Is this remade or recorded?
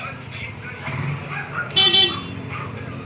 remade